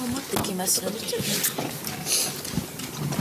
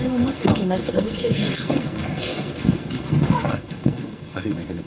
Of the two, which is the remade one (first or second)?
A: second